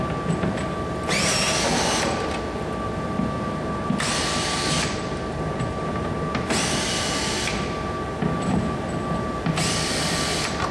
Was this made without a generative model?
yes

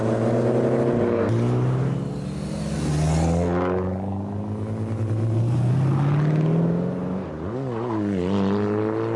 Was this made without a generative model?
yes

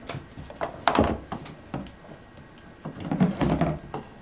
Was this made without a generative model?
yes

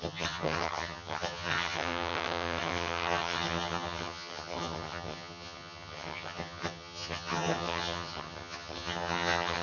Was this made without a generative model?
no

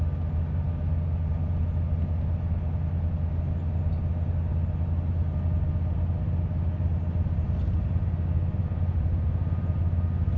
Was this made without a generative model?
yes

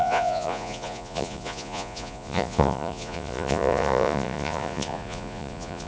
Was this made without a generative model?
no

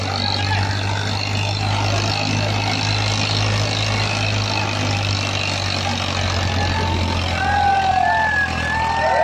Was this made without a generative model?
yes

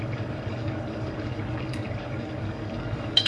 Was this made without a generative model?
no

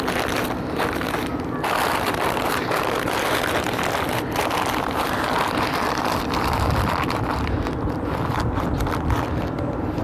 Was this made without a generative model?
yes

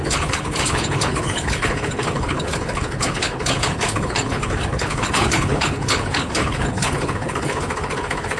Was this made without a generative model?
no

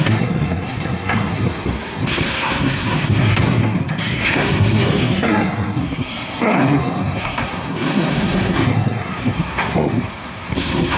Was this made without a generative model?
no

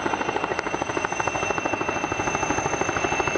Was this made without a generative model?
yes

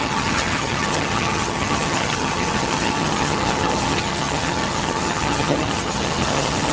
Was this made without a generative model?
no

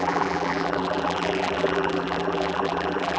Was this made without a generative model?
no